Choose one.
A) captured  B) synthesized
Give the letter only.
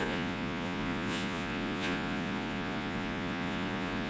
B